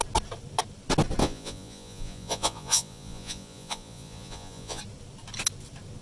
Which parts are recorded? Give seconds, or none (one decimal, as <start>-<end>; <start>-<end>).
0.0-1.2; 4.8-6.0